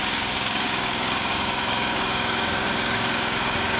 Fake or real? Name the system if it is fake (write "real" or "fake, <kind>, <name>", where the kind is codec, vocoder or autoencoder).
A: fake, codec, DAC